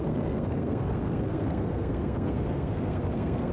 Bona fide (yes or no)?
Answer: no